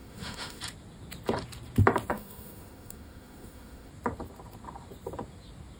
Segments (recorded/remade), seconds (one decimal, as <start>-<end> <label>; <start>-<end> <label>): 0.0-0.6 remade; 0.6-2.1 recorded; 2.1-3.9 remade; 3.9-5.8 recorded

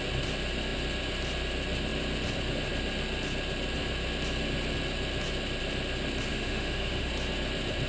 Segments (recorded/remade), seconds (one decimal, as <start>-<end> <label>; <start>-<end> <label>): 0.0-6.3 recorded; 6.3-7.1 remade; 7.1-7.9 recorded

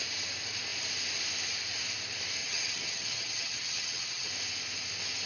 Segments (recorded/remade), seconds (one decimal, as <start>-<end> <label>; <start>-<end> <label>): 0.0-2.4 recorded; 2.4-4.3 remade; 4.3-5.3 recorded

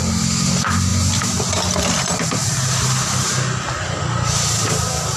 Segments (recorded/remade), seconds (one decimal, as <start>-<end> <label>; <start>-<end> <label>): 0.0-5.2 recorded

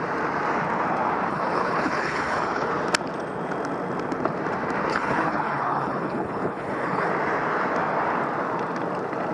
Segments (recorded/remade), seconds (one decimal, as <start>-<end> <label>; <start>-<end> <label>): 0.0-1.3 recorded; 1.3-2.7 remade; 2.7-4.9 recorded; 4.9-7.1 remade; 7.1-9.3 recorded

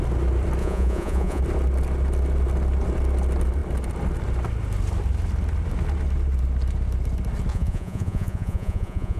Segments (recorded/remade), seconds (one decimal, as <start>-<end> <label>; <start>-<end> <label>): 0.0-0.6 recorded; 0.6-1.4 remade; 1.4-7.5 recorded; 7.5-9.2 remade

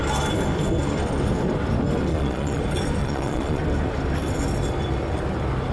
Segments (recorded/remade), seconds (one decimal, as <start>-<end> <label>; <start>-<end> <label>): 0.0-2.1 recorded; 2.1-2.6 remade; 2.6-3.0 recorded; 3.0-3.6 remade; 3.6-5.7 recorded

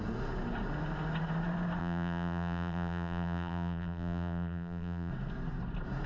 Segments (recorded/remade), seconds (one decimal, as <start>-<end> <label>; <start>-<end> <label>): 0.0-1.8 recorded; 1.8-5.1 remade; 5.1-6.1 recorded